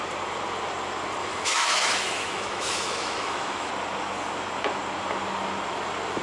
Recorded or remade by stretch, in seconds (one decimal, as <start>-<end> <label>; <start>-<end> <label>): 0.0-1.2 recorded; 1.2-3.7 remade; 3.7-6.2 recorded